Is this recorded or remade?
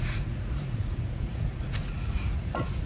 remade